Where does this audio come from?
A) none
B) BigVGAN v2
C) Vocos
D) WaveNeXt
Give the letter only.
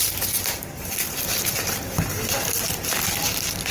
A